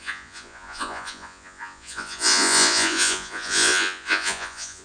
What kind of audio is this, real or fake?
fake